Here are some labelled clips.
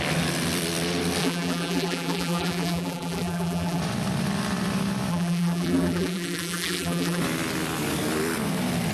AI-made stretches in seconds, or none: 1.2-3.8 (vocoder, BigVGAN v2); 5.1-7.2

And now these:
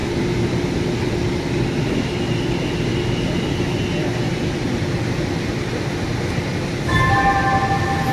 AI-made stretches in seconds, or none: 0.0-1.1 (vocoder, BigVGAN v2)

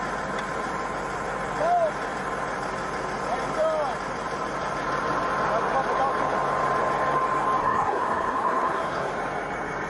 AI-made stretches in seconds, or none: 7.6-9.1 (codec, SNAC)

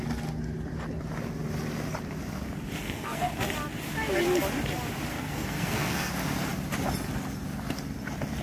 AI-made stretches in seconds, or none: 2.8-3.3 (codec, SNAC); 5.1-6.1

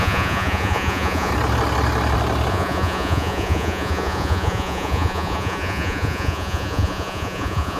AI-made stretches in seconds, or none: 0.0-1.3 (vocoder, Vocos); 2.5-7.8

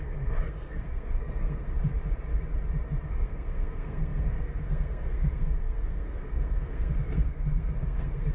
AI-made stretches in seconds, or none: 0.0-1.7 (codec, SNAC); 3.1-8.3

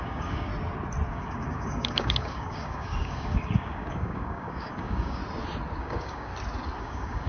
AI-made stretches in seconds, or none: 0.0-0.5 (codec, DAC); 1.1-5.2; 5.8-6.3; 6.8-7.3